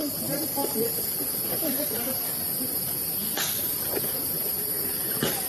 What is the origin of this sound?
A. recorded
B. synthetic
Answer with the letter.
A